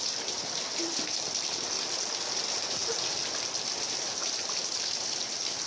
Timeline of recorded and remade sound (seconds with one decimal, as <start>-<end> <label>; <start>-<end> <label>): 0.0-5.7 remade